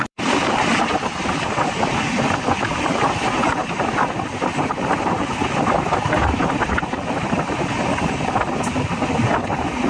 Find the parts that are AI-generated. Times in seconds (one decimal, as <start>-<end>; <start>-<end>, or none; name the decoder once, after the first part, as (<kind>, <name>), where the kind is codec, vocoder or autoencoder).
0.0-9.9 (vocoder, BigVGAN v2)